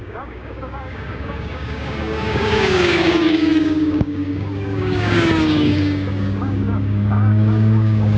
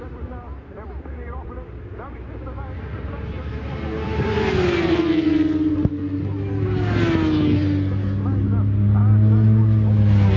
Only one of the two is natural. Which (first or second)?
second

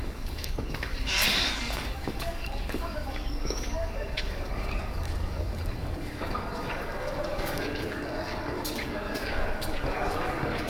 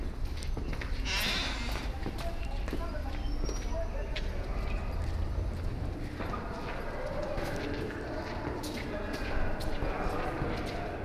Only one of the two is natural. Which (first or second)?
second